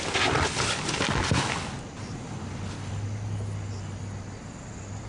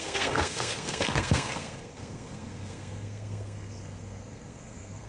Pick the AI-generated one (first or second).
second